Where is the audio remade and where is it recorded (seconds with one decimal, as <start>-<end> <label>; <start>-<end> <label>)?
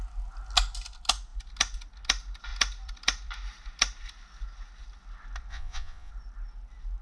0.0-5.5 recorded; 5.5-6.1 remade; 6.1-7.0 recorded